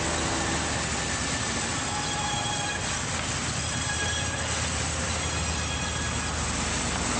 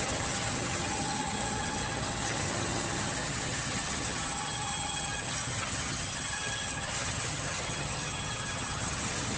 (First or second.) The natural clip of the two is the first